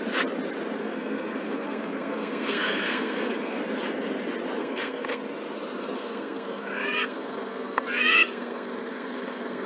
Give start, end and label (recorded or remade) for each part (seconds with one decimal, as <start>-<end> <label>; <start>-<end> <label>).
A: 0.0-0.8 recorded; 0.8-3.6 remade; 3.6-4.6 recorded; 4.6-5.2 remade; 5.2-5.8 recorded; 5.8-9.7 remade